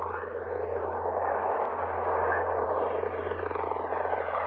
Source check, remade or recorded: recorded